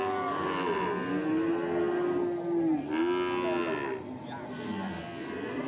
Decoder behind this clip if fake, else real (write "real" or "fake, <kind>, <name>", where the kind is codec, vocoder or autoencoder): real